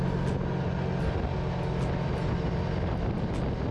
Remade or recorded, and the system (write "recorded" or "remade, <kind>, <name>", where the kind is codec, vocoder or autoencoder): recorded